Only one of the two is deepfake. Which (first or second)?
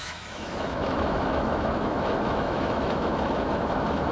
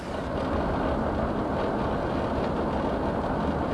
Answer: first